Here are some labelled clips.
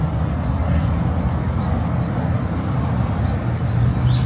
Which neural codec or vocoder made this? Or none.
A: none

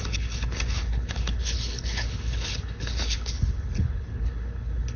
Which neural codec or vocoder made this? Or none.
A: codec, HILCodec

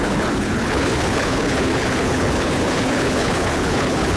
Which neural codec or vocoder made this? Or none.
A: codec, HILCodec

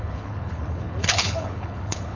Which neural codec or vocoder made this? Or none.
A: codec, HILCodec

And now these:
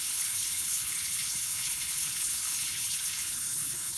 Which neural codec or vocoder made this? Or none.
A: codec, HILCodec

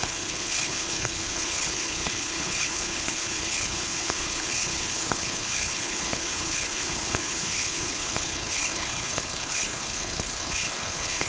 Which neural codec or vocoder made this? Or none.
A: codec, HILCodec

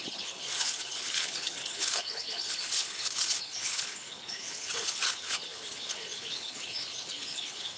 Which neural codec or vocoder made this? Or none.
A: codec, HILCodec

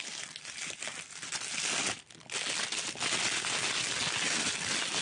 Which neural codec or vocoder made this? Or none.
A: none